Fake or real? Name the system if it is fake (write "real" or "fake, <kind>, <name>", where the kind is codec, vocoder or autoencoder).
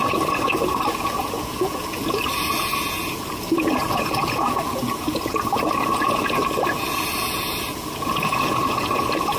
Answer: fake, vocoder, Vocos